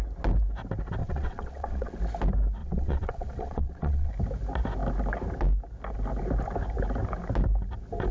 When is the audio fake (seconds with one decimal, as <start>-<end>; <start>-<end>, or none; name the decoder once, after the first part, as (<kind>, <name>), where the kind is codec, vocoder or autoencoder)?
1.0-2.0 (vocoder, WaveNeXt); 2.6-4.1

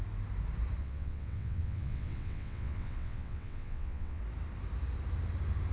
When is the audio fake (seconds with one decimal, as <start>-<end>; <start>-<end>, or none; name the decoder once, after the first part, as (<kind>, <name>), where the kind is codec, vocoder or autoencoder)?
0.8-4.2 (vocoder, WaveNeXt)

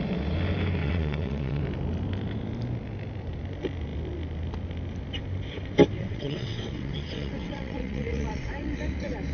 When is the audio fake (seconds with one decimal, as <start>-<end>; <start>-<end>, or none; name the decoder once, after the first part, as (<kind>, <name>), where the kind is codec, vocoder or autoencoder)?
0.8-1.6 (vocoder, WaveNeXt); 6.0-8.8

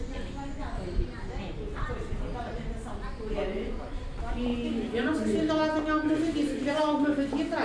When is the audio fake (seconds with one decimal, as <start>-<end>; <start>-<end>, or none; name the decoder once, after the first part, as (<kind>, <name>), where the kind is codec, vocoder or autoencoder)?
none